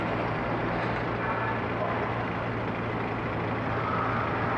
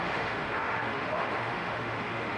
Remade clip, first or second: second